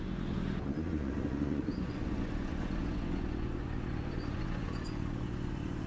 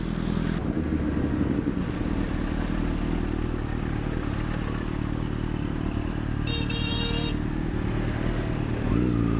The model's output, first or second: first